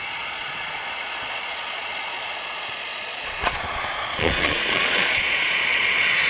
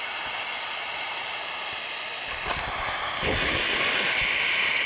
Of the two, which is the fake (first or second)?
first